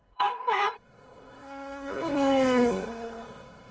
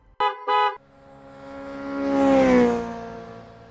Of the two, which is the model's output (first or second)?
first